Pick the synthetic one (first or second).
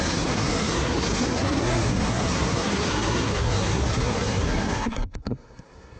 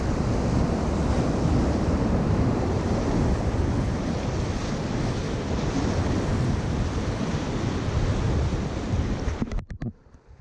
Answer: first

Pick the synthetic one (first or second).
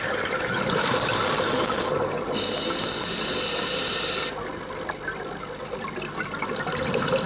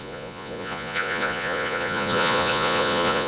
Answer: second